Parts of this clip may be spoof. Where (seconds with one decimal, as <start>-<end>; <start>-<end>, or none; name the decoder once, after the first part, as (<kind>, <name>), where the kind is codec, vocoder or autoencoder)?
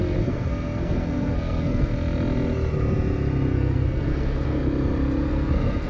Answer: 0.0-1.9 (codec, SNAC); 3.5-4.6; 5.3-5.9